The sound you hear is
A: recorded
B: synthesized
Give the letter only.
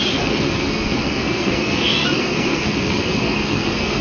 B